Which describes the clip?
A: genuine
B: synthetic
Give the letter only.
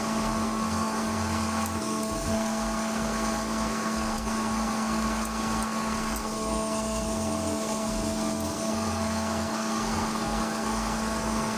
B